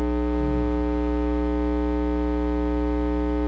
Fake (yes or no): no